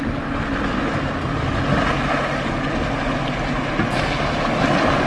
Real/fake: real